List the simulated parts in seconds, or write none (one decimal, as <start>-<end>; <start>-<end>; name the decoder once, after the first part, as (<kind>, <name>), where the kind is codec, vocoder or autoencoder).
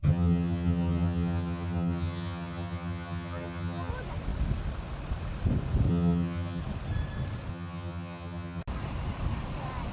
0.0-3.9 (vocoder, HiFi-GAN); 5.9-6.6; 7.5-8.6